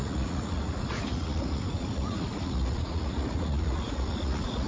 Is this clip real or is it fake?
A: fake